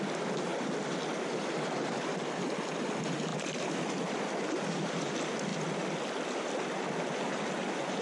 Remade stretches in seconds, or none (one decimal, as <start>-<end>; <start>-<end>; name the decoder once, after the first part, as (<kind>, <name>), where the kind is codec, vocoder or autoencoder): 3.3-5.0 (vocoder, BigVGAN v2)